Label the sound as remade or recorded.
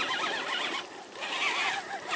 recorded